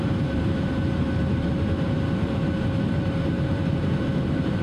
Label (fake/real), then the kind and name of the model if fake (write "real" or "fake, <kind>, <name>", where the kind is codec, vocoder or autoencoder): fake, vocoder, BigVGAN v2